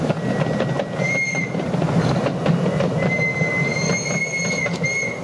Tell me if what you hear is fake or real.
real